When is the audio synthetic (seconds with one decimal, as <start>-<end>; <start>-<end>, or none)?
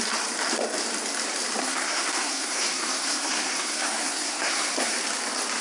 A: 1.6-4.9